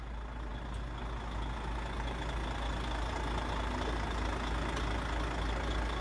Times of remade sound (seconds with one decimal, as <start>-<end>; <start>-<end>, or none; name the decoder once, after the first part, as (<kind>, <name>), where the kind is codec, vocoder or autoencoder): none

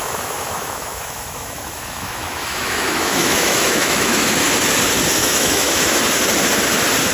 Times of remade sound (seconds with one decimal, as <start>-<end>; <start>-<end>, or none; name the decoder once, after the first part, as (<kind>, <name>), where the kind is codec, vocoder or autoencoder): 0.0-4.3 (autoencoder, DAC-VAE); 5.2-5.8

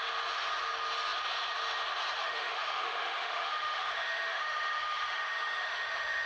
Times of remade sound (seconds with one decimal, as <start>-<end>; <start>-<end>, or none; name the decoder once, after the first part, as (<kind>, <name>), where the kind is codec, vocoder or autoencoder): 2.2-6.3 (autoencoder, DAC-VAE)

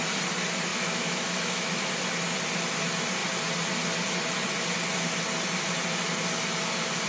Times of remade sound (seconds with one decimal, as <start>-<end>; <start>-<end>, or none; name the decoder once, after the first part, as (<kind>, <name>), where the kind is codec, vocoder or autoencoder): 0.7-1.9 (autoencoder, DAC-VAE)

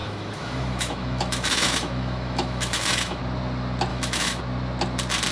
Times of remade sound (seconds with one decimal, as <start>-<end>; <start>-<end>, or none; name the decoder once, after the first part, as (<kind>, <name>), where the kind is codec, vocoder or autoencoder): 0.0-3.2 (autoencoder, DAC-VAE); 3.9-4.4

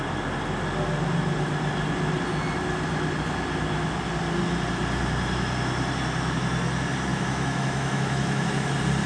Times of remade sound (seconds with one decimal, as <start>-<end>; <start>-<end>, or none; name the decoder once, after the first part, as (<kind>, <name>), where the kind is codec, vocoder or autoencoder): 7.1-8.7 (autoencoder, DAC-VAE)